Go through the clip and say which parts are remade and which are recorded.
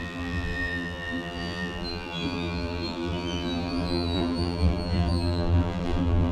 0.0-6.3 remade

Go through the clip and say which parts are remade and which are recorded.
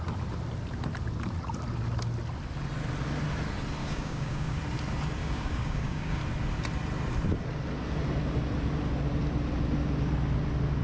0.0-3.8 recorded; 3.8-4.6 remade; 4.6-5.2 recorded; 5.2-6.2 remade; 6.2-10.8 recorded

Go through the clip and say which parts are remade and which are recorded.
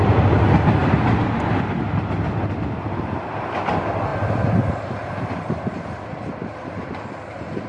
0.0-0.8 recorded; 0.8-1.4 remade; 1.4-7.7 recorded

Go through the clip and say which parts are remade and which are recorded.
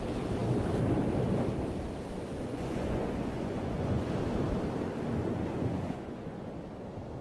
0.0-2.3 recorded; 2.3-4.1 remade; 4.1-5.2 recorded; 5.2-6.5 remade; 6.5-7.2 recorded